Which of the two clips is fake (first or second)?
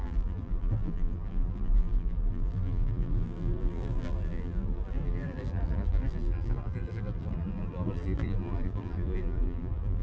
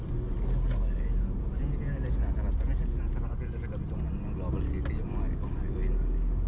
first